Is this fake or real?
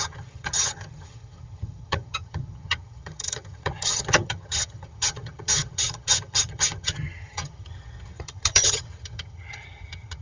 fake